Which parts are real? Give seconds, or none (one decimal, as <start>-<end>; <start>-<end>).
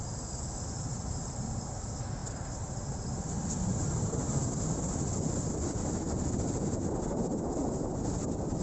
0.0-8.6